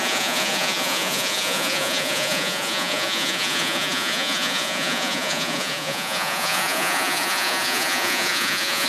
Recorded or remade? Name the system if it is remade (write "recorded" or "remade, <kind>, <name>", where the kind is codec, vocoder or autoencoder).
remade, vocoder, Vocos